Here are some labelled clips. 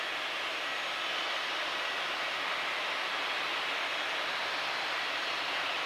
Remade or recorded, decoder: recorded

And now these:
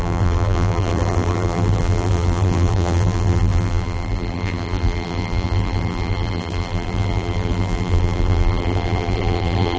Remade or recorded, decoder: remade, vocoder, BigVGAN v2